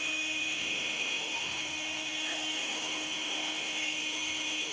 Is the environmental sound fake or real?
fake